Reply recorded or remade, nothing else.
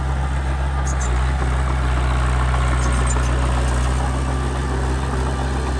recorded